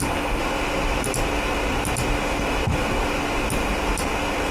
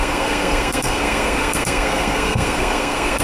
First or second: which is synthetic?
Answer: second